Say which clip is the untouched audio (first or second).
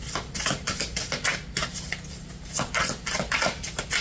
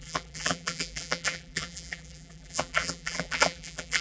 first